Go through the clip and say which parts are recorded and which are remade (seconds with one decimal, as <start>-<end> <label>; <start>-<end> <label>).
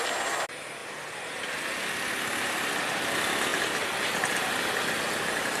0.0-5.6 recorded